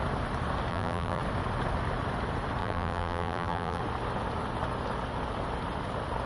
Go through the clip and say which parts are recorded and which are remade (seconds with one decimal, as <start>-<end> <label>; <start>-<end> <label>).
0.0-0.7 recorded; 0.7-1.2 remade; 1.2-2.6 recorded; 2.6-3.8 remade; 3.8-6.3 recorded